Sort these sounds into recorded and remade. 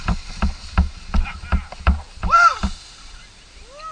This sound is recorded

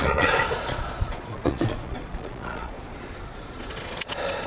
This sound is remade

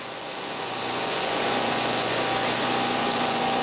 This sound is remade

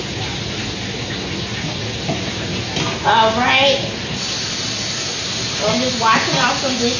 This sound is recorded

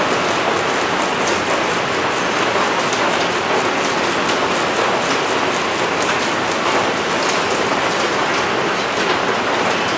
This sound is recorded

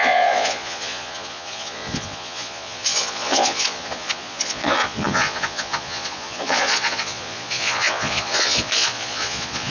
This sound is remade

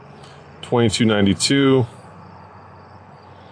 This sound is remade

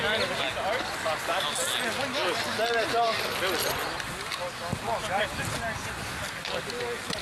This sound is recorded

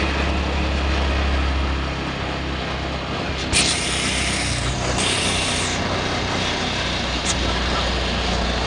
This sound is recorded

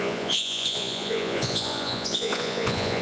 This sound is remade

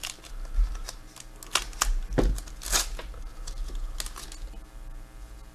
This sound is recorded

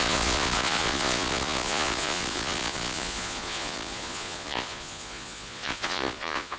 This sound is remade